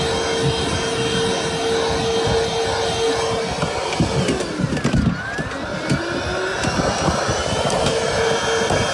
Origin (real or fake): real